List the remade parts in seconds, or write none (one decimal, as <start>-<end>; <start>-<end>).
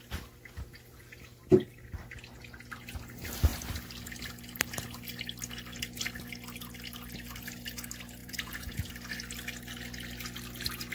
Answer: 8.2-8.9